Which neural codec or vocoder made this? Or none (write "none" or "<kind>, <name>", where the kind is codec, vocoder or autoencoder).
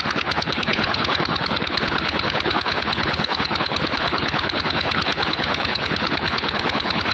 codec, HILCodec